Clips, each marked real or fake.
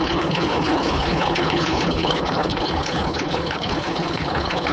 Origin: fake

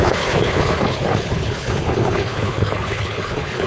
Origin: fake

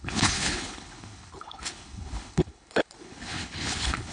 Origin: fake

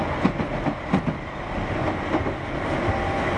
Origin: real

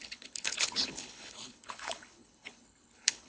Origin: fake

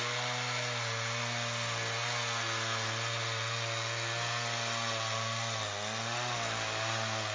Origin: real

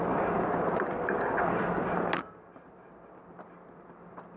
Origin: real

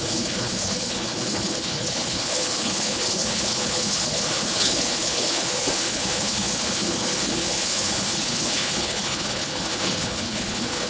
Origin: fake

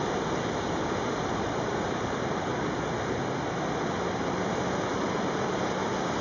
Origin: real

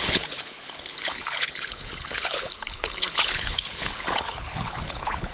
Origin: fake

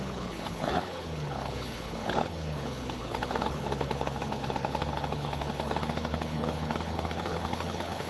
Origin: fake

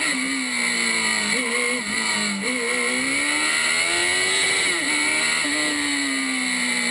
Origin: real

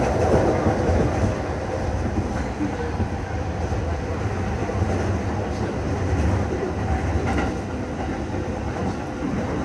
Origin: real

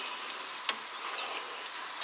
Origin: real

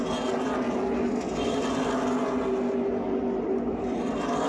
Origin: real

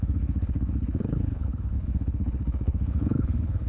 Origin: fake